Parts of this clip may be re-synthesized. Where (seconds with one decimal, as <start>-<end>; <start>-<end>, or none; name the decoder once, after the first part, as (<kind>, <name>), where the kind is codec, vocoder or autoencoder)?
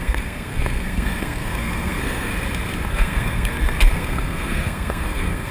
0.0-2.3 (codec, SNAC); 2.9-5.5